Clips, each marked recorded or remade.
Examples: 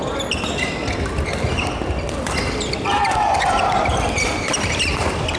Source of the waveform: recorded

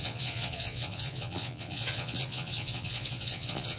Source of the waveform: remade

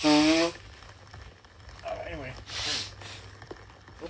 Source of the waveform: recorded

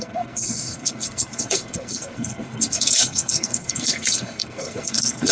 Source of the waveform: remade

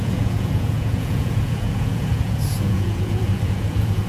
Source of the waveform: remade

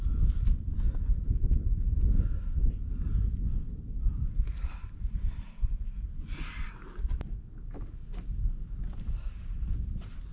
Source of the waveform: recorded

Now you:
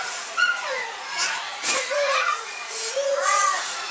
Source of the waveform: remade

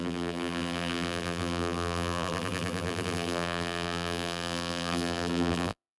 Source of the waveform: remade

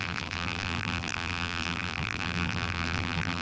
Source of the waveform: remade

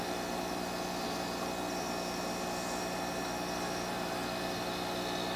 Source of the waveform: recorded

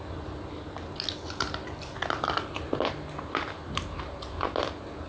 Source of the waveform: recorded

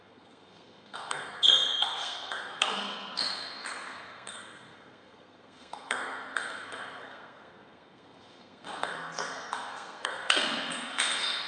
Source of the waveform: remade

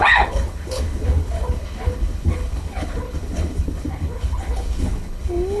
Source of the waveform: remade